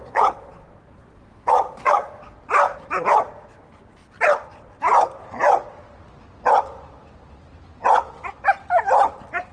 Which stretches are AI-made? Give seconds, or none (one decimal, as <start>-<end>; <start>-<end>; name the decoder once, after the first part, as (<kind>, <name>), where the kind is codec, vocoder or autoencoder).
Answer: 0.0-2.2 (vocoder, Vocos)